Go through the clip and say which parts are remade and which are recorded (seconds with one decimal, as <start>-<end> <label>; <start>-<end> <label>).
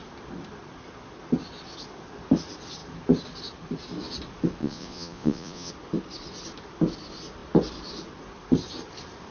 0.0-4.6 recorded; 4.6-5.7 remade; 5.7-9.3 recorded